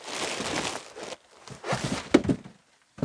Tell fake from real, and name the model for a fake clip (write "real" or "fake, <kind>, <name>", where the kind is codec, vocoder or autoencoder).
real